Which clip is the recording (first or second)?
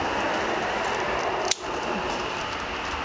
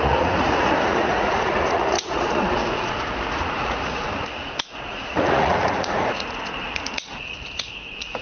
first